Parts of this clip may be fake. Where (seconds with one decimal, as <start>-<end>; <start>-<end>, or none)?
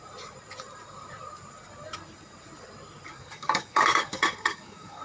3.1-5.0